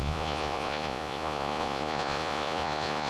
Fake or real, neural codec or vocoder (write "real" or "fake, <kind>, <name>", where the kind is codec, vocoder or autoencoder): fake, vocoder, Vocos